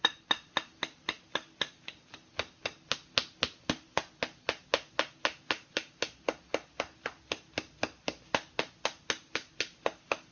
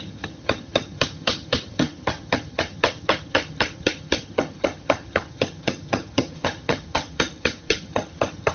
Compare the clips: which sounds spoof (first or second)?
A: second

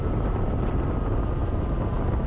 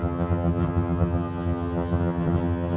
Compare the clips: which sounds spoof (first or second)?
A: second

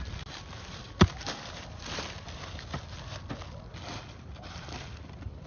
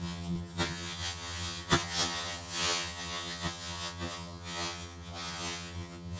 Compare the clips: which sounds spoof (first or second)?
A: second